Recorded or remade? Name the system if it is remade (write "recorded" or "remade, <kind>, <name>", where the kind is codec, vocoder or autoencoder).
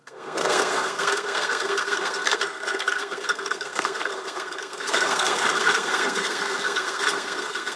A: remade, codec, SNAC